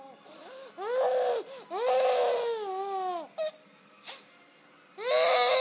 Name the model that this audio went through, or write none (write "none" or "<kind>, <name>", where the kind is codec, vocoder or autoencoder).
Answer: none